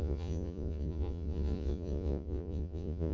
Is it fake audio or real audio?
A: fake